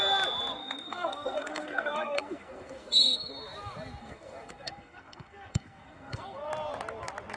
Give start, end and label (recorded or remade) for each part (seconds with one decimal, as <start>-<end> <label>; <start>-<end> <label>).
0.0-0.6 recorded; 0.6-3.3 remade; 3.3-4.0 recorded; 4.0-6.5 remade; 6.5-7.4 recorded